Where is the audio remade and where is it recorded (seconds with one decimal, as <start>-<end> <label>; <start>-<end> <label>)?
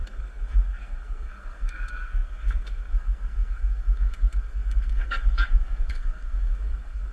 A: 0.0-7.1 remade